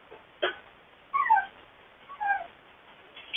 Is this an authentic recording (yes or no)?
yes